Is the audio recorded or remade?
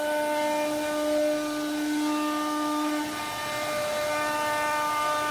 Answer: recorded